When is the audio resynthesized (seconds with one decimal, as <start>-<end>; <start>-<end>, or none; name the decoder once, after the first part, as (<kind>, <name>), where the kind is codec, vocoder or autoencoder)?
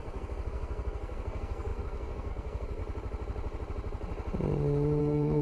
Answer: 0.0-2.8 (codec, SNAC); 5.0-5.4